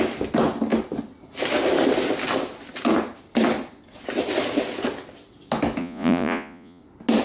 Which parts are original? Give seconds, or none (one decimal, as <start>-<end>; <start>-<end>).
0.0-5.8; 6.8-7.2